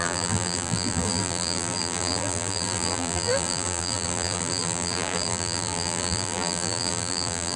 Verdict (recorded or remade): remade